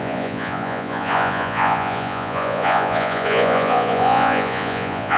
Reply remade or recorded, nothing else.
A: remade